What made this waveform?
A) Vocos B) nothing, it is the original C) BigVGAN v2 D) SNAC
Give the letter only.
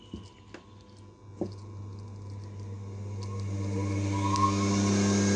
B